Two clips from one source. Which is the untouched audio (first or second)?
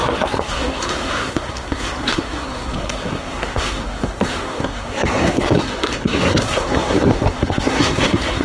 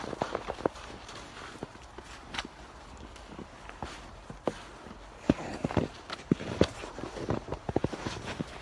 second